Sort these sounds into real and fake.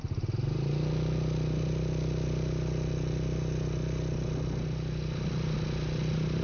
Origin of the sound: real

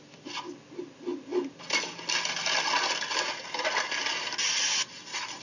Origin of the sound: real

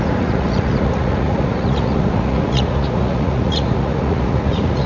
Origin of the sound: fake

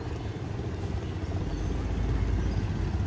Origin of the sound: real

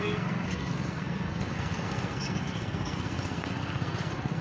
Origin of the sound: fake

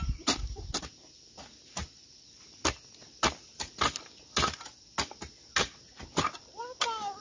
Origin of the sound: real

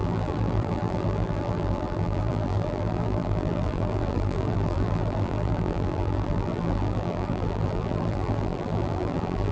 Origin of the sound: fake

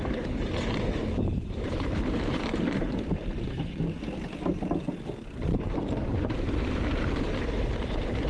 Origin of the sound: fake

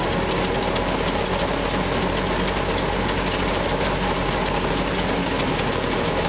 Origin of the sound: real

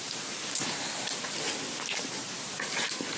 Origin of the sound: real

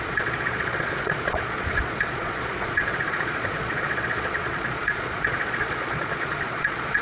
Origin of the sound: fake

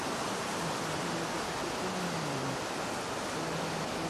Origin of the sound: real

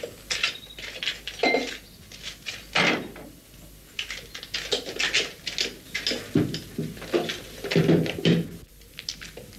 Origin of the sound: real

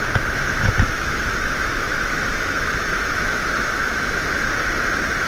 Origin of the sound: fake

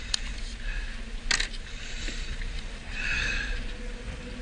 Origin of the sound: real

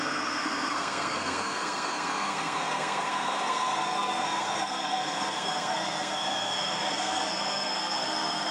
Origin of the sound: fake